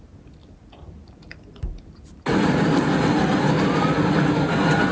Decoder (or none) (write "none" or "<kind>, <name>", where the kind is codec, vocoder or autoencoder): none